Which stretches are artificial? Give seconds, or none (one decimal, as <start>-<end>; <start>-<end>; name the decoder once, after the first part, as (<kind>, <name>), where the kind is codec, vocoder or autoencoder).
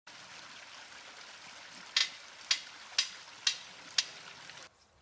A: none